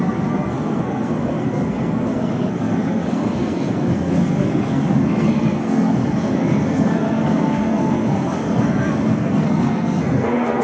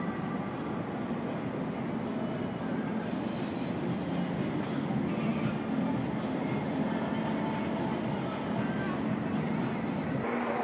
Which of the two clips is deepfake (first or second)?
first